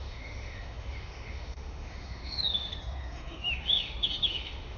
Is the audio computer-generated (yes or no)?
yes